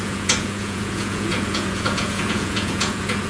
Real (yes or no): no